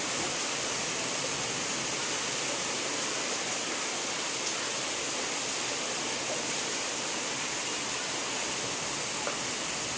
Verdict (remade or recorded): recorded